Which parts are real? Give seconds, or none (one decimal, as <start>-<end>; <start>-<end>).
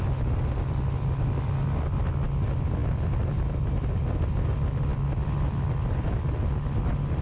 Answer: 0.0-7.2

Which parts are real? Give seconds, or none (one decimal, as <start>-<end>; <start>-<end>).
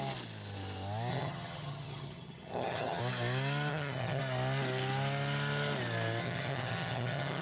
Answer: 0.0-1.1; 3.0-3.7; 4.2-6.2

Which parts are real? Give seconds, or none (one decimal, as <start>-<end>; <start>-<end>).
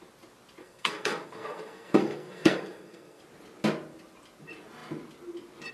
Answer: 0.0-0.6; 3.2-5.7